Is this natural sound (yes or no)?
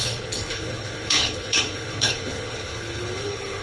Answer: no